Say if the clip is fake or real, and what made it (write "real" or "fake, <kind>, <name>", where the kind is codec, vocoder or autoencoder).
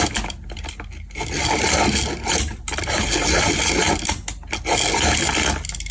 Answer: real